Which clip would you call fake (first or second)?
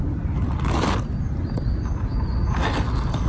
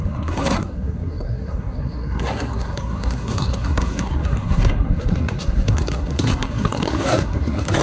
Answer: second